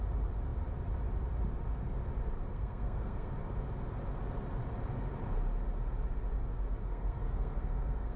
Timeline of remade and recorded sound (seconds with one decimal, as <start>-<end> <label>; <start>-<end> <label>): 0.0-2.5 recorded; 2.5-3.3 remade; 3.3-6.8 recorded; 6.8-8.2 remade